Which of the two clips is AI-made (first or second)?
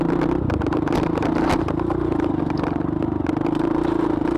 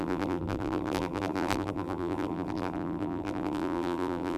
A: second